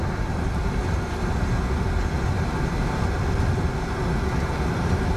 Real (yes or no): yes